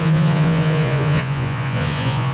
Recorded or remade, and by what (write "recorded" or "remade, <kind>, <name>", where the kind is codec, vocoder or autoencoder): remade, vocoder, Vocos